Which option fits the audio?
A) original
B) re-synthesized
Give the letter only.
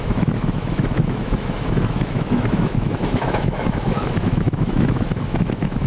B